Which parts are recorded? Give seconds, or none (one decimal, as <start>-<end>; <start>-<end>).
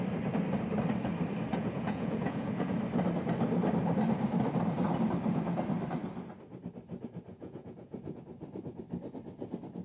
0.0-1.5; 2.8-7.3; 8.2-9.8